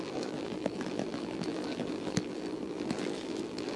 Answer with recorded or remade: remade